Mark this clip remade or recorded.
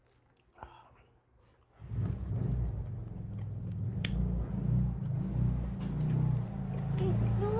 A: recorded